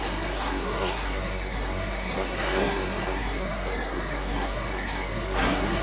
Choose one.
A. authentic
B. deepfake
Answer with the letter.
B